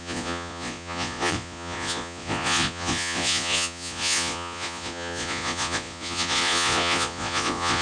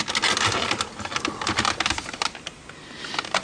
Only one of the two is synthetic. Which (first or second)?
first